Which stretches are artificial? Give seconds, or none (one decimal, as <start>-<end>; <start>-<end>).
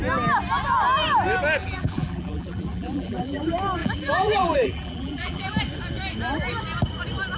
1.6-3.4; 3.8-5.6